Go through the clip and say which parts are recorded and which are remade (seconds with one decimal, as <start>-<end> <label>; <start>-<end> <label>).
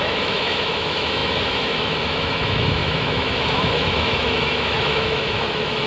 0.0-5.9 remade